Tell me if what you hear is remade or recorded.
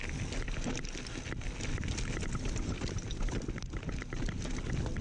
recorded